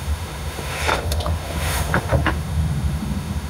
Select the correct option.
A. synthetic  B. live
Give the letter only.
A